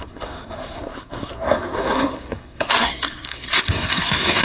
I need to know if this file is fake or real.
fake